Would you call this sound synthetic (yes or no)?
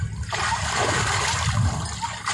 no